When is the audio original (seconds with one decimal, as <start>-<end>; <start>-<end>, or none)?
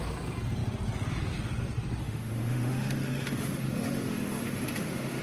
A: 0.0-2.0